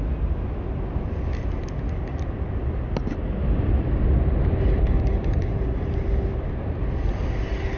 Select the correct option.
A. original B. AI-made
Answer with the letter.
A